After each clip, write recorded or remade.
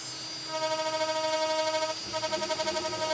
recorded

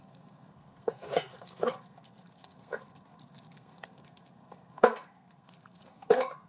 remade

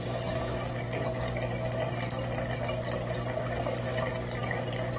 recorded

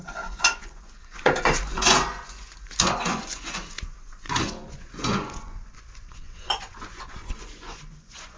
remade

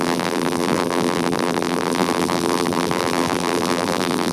remade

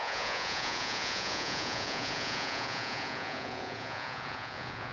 remade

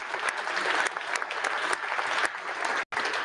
recorded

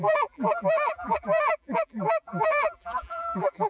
remade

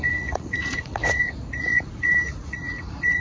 remade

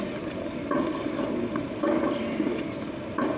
recorded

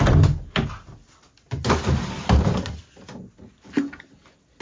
recorded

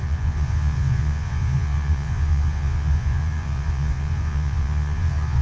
remade